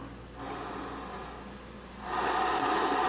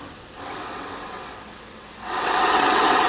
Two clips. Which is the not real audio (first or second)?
second